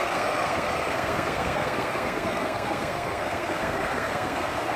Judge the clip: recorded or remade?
remade